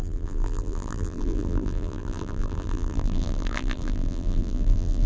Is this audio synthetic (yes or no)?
yes